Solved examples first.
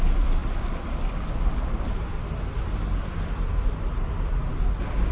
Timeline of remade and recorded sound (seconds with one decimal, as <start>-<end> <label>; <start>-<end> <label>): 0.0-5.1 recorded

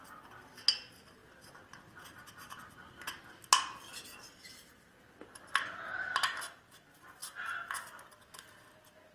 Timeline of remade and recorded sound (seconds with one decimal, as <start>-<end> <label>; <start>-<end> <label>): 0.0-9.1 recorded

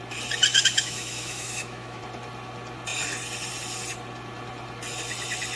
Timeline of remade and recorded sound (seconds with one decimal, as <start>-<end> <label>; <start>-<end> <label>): 0.0-0.5 recorded; 0.5-2.0 remade; 2.0-5.6 recorded